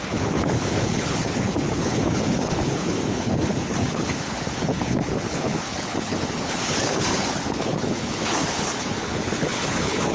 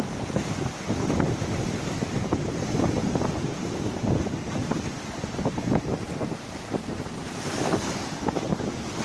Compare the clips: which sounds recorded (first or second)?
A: second